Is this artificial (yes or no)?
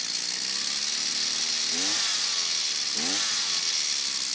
no